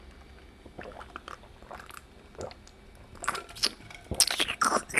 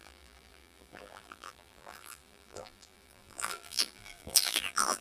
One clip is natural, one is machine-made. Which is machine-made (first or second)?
second